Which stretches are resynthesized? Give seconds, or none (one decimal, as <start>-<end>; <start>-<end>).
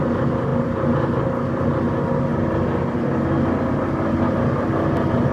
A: none